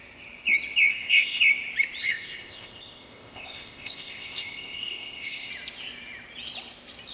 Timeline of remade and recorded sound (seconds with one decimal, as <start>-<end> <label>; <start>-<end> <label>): 0.0-0.9 recorded; 0.9-1.4 remade; 1.4-2.0 recorded; 2.0-5.5 remade; 5.5-7.1 recorded